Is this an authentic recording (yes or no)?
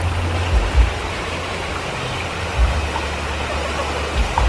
yes